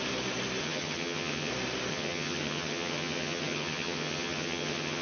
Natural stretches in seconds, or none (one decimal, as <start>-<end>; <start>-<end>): 0.0-0.6; 1.5-1.9